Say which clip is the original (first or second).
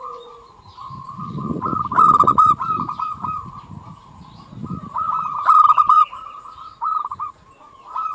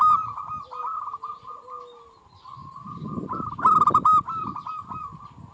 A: second